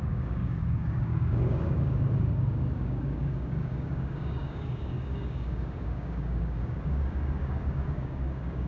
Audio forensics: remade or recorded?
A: remade